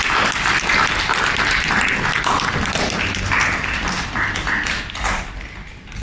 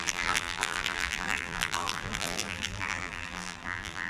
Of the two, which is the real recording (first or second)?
first